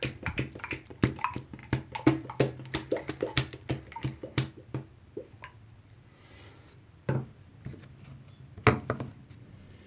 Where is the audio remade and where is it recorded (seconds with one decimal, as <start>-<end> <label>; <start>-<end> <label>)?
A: 0.0-9.9 recorded